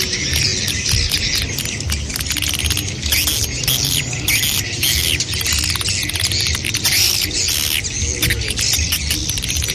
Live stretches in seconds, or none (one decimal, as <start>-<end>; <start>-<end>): 0.0-9.7